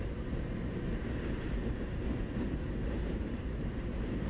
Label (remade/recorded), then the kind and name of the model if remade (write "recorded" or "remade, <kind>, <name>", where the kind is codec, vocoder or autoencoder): remade, vocoder, BigVGAN v2